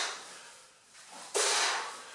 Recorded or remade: recorded